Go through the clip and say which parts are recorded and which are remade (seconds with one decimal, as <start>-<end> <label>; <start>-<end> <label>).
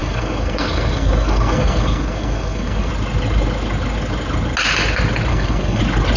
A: 0.0-2.9 remade; 2.9-5.3 recorded; 5.3-5.8 remade; 5.8-6.2 recorded